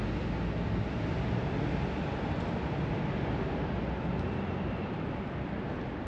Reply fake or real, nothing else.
real